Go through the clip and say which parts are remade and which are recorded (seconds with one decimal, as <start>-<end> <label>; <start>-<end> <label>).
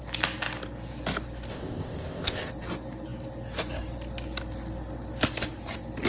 0.0-1.5 recorded; 1.5-2.5 remade; 2.5-6.1 recorded